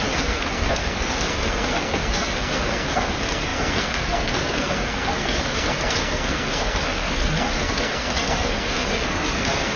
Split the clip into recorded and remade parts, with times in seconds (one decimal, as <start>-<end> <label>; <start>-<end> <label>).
0.0-9.8 remade

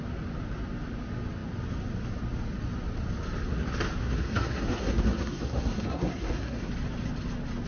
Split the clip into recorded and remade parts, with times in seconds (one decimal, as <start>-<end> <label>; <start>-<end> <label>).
0.0-4.0 recorded; 4.0-6.7 remade; 6.7-7.7 recorded